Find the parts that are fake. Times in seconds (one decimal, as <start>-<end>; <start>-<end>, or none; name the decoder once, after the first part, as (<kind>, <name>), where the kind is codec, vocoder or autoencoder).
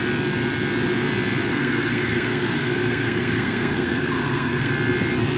1.5-4.7 (codec, SNAC)